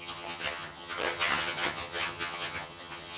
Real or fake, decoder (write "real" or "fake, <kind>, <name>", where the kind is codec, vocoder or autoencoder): fake, vocoder, HiFi-GAN